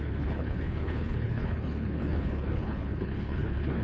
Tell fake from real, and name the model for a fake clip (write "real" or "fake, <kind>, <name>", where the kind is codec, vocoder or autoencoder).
fake, codec, HILCodec